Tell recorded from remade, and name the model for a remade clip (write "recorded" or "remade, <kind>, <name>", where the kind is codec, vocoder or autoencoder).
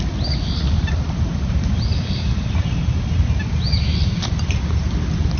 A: recorded